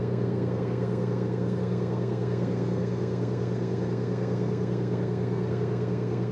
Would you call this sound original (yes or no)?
no